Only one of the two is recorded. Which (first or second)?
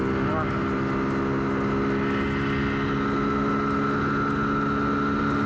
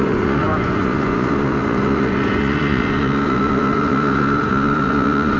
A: first